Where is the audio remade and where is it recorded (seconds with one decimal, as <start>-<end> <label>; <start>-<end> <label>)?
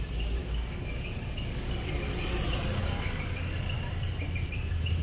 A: 0.0-0.4 recorded; 0.4-2.0 remade; 2.0-2.8 recorded; 2.8-3.5 remade; 3.5-5.0 recorded